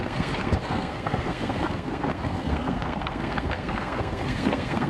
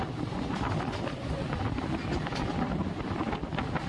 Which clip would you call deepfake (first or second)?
first